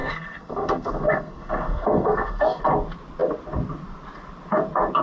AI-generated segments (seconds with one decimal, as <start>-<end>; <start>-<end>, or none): 0.0-2.6